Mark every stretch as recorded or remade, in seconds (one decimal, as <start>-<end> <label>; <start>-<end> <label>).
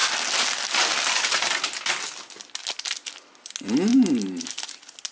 0.0-5.1 recorded